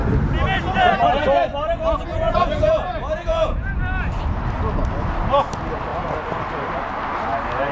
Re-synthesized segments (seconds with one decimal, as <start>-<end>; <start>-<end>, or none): 2.1-3.7